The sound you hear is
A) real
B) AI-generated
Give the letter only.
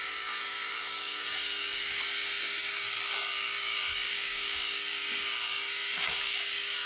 B